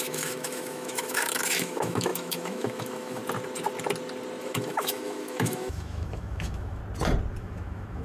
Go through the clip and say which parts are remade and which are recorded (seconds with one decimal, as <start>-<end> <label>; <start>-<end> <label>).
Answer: 0.0-3.2 remade; 3.2-4.4 recorded; 4.4-6.8 remade; 6.8-7.4 recorded; 7.4-8.0 remade